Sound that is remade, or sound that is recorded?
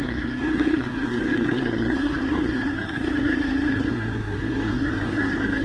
remade